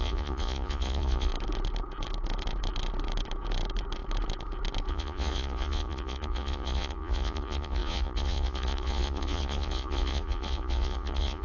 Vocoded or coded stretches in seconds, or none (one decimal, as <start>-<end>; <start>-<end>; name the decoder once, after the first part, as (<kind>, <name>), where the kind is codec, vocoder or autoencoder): 0.0-1.3 (vocoder, Vocos); 4.9-11.4